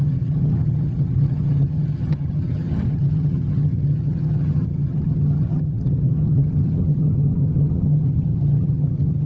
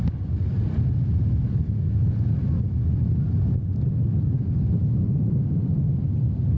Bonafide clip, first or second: second